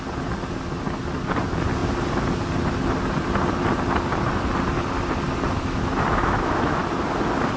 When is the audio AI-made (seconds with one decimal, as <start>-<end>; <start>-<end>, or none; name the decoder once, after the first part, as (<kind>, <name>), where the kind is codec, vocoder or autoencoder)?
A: 6.2-6.8 (autoencoder, DAC-VAE)